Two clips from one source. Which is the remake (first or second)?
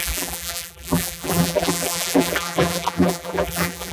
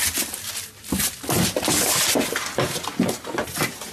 first